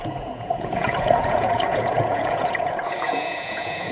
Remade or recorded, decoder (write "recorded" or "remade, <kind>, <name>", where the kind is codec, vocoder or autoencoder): remade, vocoder, Vocos